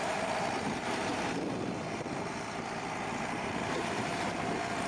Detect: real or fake fake